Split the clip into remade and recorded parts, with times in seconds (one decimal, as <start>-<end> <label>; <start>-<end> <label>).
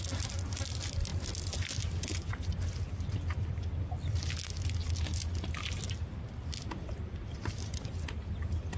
0.0-8.8 recorded